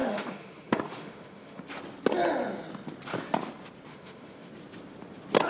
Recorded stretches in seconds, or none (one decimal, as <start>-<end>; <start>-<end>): 1.6-3.9; 4.5-5.5